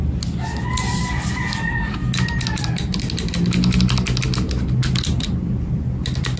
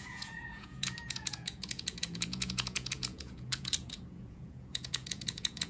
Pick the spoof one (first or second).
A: second